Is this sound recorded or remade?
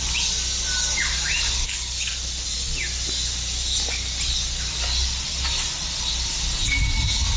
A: recorded